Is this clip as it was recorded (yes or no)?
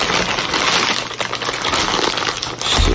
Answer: yes